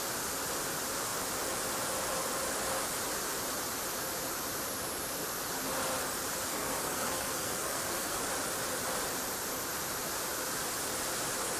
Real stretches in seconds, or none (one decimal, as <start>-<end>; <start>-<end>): 0.0-6.5; 8.2-11.6

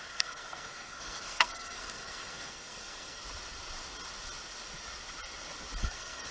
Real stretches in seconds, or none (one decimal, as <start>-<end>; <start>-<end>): 3.2-5.8

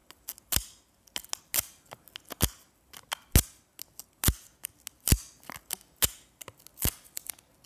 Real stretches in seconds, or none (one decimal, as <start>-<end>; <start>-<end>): 0.0-7.7

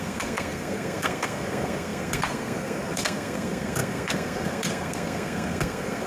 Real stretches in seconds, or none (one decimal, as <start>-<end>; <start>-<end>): none

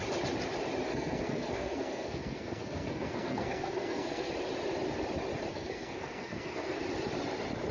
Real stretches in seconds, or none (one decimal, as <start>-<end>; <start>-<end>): 0.0-0.9; 4.3-5.5; 6.8-7.7

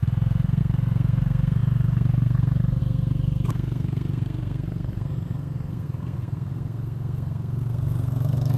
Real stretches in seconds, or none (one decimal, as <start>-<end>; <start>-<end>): none

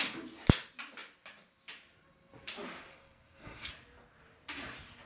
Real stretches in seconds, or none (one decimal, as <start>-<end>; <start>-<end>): 0.0-2.9; 3.7-5.1

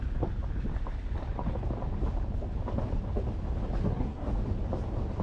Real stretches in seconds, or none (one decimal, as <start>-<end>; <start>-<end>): 0.0-3.8; 4.3-5.2